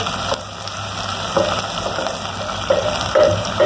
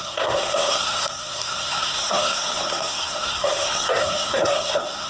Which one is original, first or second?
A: first